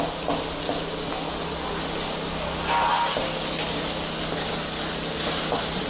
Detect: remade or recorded recorded